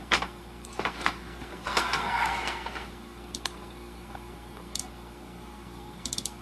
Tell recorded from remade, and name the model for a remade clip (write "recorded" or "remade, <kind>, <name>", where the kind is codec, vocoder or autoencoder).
remade, codec, SNAC